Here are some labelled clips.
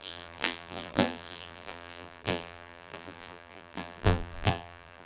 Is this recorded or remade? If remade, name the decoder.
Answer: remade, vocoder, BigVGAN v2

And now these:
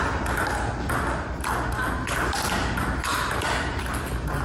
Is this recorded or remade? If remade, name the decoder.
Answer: recorded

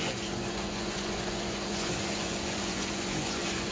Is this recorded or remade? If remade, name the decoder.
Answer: remade, vocoder, Vocos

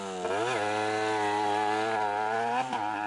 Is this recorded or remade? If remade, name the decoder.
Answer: recorded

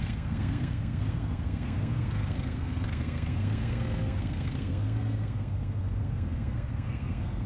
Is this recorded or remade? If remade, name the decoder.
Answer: remade, codec, SNAC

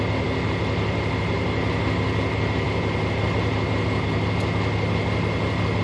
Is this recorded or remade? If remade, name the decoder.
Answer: recorded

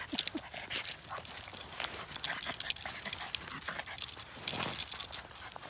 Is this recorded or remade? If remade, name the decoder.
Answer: recorded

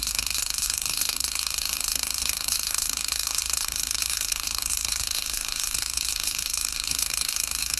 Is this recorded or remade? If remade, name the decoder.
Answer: remade, codec, SNAC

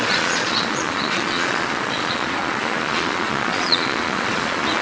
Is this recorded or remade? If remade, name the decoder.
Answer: remade, vocoder, Vocos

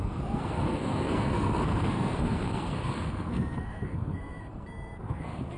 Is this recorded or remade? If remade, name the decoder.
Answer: remade, codec, SNAC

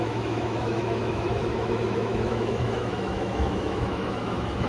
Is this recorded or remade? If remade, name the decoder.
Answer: remade, autoencoder, DAC-VAE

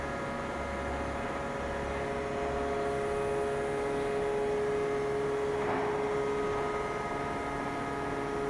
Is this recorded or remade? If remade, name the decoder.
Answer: recorded